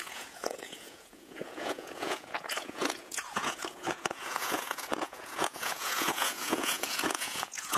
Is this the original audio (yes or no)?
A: no